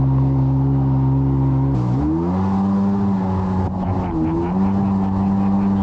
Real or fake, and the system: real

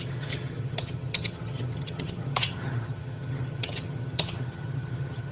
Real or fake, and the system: fake, vocoder, HiFi-GAN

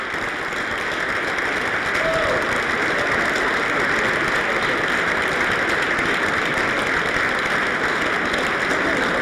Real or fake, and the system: real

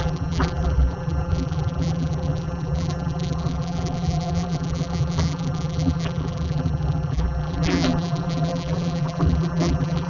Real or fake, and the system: fake, vocoder, BigVGAN v2